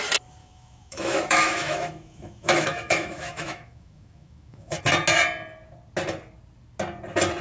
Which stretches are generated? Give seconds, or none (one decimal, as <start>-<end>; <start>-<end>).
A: 0.4-4.8